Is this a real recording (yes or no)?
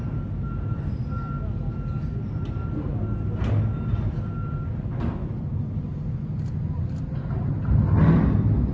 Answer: yes